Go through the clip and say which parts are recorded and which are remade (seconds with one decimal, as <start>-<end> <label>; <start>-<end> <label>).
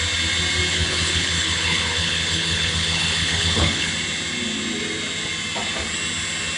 0.0-0.7 recorded; 0.7-3.9 remade; 3.9-6.6 recorded